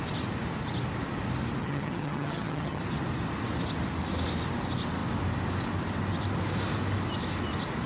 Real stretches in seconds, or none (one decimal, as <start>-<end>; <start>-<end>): 0.0-1.6; 2.8-7.9